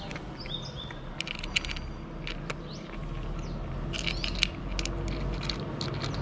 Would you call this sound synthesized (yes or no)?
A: no